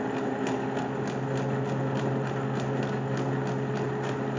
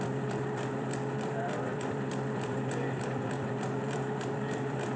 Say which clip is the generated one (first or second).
second